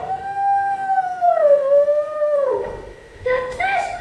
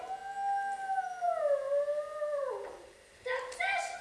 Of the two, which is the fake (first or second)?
first